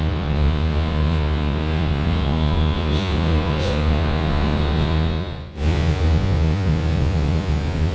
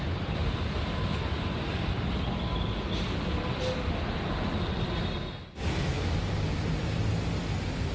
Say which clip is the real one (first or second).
second